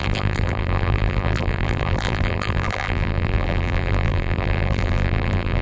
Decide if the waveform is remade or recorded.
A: remade